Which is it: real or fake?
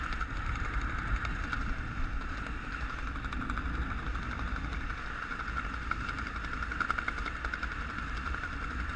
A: real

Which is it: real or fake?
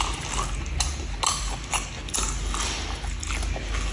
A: real